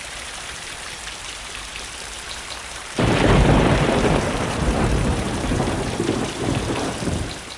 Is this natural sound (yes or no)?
no